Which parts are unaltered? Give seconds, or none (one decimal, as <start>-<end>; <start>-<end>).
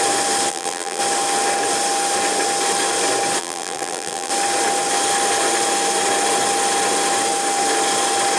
0.0-0.5; 1.0-3.4; 4.3-8.4